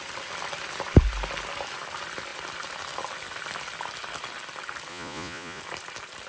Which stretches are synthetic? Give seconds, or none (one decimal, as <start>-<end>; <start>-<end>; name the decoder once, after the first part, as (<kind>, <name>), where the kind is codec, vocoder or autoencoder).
4.9-5.6 (vocoder, Vocos)